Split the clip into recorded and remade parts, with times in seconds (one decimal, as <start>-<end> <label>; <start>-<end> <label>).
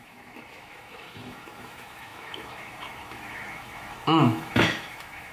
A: 0.0-5.3 remade